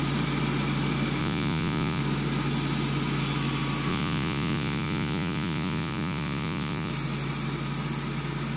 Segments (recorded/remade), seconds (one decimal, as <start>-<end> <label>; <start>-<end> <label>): 0.0-1.2 recorded; 1.2-2.0 remade; 2.0-3.9 recorded; 3.9-6.9 remade; 6.9-8.6 recorded